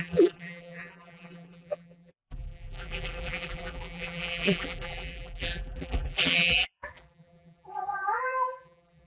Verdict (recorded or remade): remade